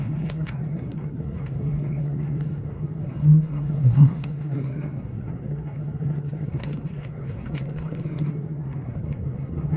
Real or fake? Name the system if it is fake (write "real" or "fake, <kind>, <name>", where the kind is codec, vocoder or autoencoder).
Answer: fake, codec, SNAC